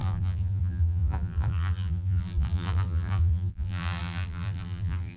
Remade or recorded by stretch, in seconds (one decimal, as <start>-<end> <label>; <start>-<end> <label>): 0.0-5.2 remade